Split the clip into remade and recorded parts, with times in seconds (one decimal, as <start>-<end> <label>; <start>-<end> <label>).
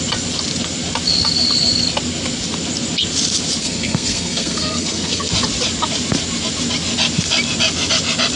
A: 0.0-3.6 recorded; 3.6-5.3 remade; 5.3-8.4 recorded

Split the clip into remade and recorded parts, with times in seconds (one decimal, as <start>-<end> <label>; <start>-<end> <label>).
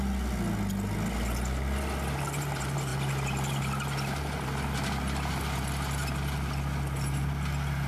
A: 0.0-7.9 recorded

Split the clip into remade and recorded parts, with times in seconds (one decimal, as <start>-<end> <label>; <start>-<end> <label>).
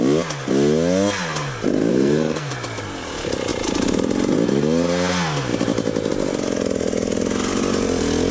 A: 0.0-1.9 recorded; 1.9-2.5 remade; 2.5-8.3 recorded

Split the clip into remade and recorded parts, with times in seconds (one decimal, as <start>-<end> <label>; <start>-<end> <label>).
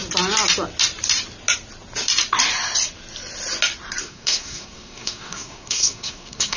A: 0.0-4.0 recorded; 4.0-6.6 remade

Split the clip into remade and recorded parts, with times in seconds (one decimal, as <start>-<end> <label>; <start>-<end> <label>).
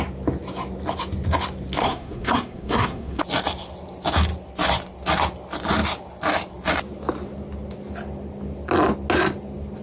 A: 0.0-1.8 recorded; 1.8-3.2 remade; 3.2-9.8 recorded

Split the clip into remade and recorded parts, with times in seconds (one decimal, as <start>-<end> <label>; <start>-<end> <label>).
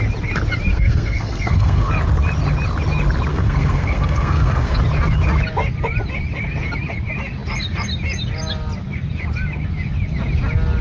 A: 0.0-0.7 recorded; 0.7-1.9 remade; 1.9-3.3 recorded; 3.3-4.8 remade; 4.8-10.8 recorded